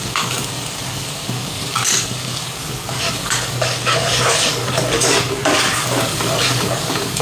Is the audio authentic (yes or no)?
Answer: no